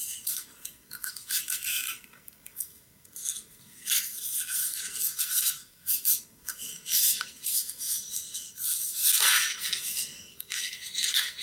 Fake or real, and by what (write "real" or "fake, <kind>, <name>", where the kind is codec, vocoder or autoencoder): fake, codec, SNAC